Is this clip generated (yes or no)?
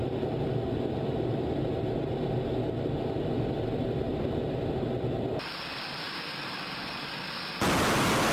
no